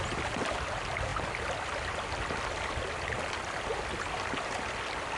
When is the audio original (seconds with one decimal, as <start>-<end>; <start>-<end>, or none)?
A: 0.0-5.2